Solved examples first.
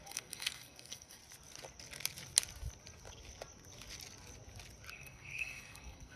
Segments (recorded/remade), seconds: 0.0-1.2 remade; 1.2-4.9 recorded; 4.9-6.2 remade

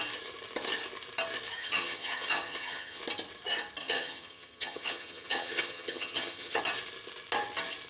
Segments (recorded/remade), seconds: 0.0-1.6 recorded; 1.6-3.0 remade; 3.0-3.8 recorded; 3.8-6.6 remade; 6.6-7.9 recorded

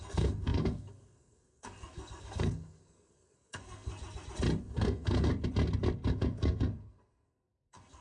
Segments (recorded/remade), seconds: 0.0-3.9 remade; 3.9-4.6 recorded; 4.6-5.3 remade; 5.3-6.1 recorded; 6.1-8.0 remade

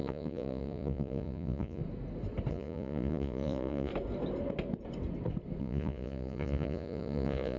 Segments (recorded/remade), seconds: 0.0-1.8 remade; 1.8-2.5 recorded; 2.5-3.9 remade; 3.9-5.6 recorded; 5.6-7.6 remade

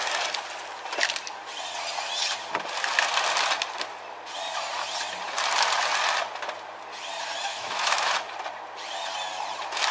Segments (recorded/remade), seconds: 0.0-7.5 recorded; 7.5-8.1 remade; 8.1-9.9 recorded

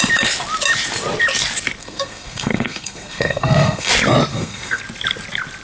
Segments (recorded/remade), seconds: 0.0-1.8 recorded; 1.8-3.9 remade; 3.9-4.3 recorded; 4.3-4.8 remade; 4.8-5.6 recorded

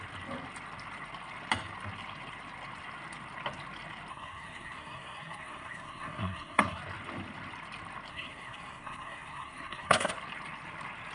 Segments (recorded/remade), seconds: 0.0-4.1 recorded; 4.1-6.8 remade; 6.8-8.1 recorded; 8.1-10.1 remade; 10.1-11.1 recorded

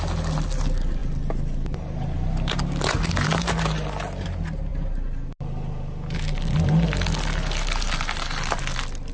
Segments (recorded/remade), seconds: 0.0-9.1 recorded